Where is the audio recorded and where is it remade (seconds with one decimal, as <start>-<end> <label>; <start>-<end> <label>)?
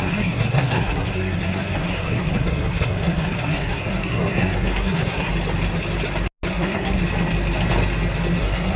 0.0-5.3 remade; 5.3-6.5 recorded; 6.5-7.0 remade; 7.0-8.4 recorded; 8.4-8.8 remade